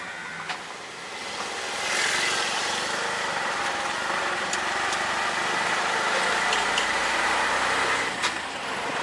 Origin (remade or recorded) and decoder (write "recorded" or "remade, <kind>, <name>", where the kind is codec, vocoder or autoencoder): recorded